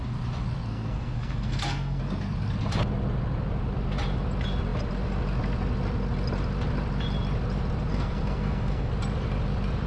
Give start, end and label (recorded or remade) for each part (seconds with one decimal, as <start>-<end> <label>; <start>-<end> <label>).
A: 0.0-0.7 recorded; 0.7-2.0 remade; 2.0-7.9 recorded; 7.9-8.9 remade; 8.9-9.9 recorded